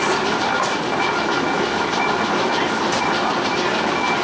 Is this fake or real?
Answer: real